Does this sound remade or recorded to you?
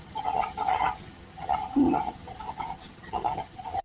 remade